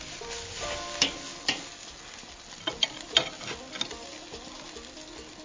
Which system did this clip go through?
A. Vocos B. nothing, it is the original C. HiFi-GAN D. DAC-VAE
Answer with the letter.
B